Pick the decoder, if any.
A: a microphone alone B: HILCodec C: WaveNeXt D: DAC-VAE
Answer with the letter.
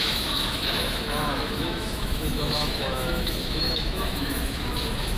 D